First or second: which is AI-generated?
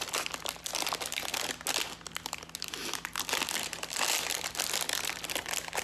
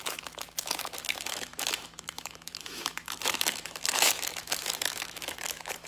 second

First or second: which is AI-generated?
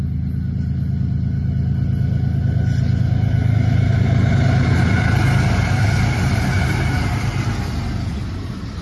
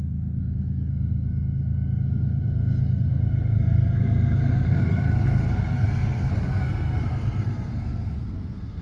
second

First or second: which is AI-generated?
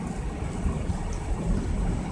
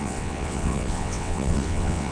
second